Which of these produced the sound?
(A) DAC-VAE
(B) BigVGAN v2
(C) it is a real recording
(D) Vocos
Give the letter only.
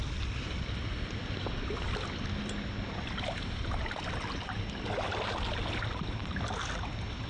C